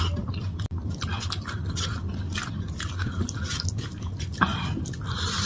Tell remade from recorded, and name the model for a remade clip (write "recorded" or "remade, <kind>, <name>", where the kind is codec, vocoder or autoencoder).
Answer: recorded